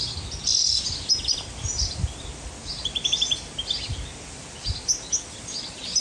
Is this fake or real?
real